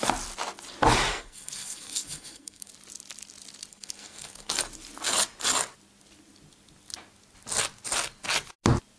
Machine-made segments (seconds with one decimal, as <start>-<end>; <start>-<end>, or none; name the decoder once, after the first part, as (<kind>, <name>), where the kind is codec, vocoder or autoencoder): 1.1-2.7 (codec, SNAC); 3.7-4.6